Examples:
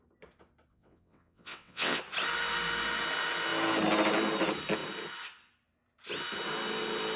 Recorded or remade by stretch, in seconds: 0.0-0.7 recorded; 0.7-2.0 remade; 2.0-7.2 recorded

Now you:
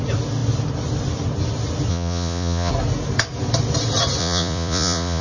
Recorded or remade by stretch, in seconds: 0.0-1.9 recorded; 1.9-2.7 remade; 2.7-4.2 recorded; 4.2-5.2 remade

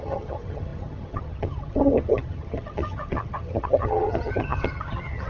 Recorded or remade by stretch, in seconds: 0.0-5.3 remade

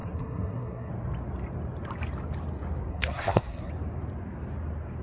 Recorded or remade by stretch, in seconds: 0.0-0.9 remade; 0.9-2.9 recorded; 2.9-3.7 remade; 3.7-5.0 recorded

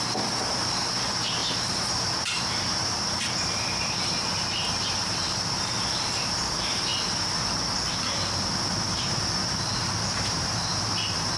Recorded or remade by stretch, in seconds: 0.0-6.9 remade; 6.9-8.6 recorded; 8.6-11.4 remade

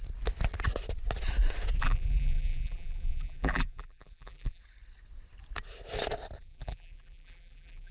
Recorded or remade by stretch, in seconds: 0.0-1.8 recorded; 1.8-4.6 remade; 4.6-6.4 recorded; 6.4-7.9 remade

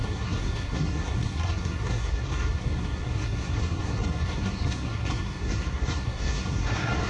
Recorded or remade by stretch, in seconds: 0.0-7.1 remade